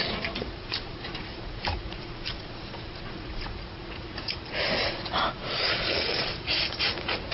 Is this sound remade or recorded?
remade